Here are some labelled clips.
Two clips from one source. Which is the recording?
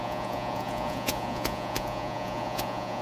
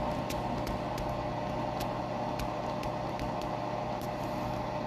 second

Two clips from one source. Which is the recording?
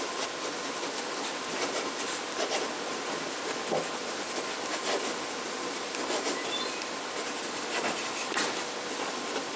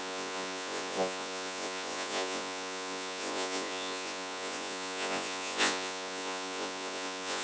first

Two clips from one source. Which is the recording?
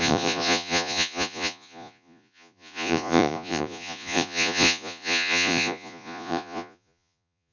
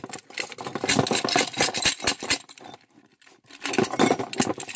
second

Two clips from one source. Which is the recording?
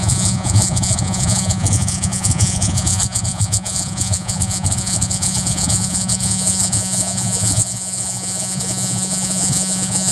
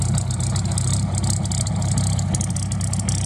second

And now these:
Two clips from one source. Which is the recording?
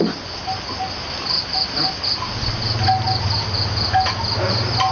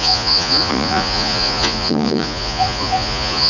first